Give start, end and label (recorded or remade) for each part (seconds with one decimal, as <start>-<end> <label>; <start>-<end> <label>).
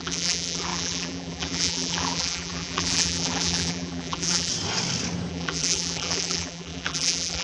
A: 0.0-4.5 remade; 4.5-5.3 recorded; 5.3-7.4 remade